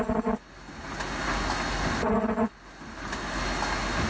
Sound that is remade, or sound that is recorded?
recorded